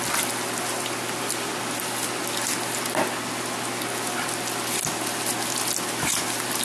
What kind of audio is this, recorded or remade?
recorded